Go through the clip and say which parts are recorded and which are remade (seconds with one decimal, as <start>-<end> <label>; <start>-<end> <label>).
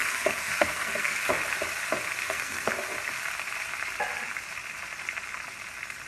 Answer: 0.0-1.3 remade; 1.3-2.2 recorded; 2.2-2.7 remade; 2.7-6.1 recorded